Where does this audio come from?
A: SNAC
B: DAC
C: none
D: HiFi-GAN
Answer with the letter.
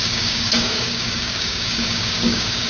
B